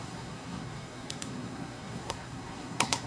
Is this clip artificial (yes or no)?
yes